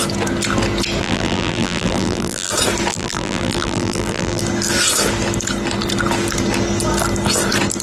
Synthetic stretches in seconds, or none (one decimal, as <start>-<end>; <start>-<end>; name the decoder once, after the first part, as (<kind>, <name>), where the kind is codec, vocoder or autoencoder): 1.0-2.5 (vocoder, BigVGAN v2); 2.9-4.4